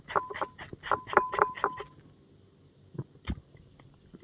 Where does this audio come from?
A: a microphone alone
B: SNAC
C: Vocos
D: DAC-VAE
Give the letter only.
A